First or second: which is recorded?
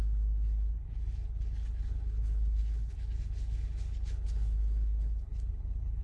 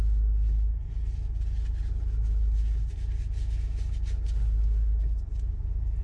second